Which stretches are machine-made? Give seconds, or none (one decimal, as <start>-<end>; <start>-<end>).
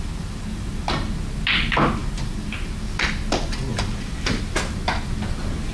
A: 3.7-4.4